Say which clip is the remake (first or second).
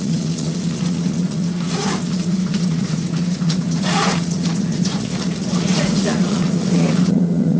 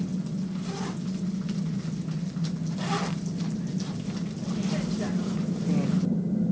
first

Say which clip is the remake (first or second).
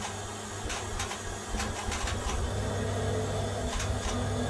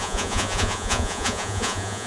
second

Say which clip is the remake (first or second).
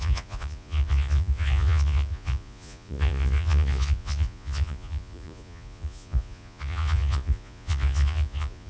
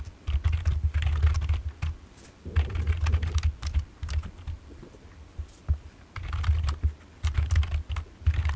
first